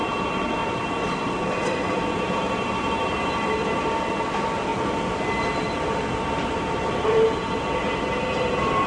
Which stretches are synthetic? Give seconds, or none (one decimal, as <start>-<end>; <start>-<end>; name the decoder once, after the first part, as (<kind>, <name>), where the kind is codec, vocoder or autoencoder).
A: 0.6-2.3 (vocoder, BigVGAN v2)